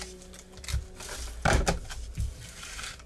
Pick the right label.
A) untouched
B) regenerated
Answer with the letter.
A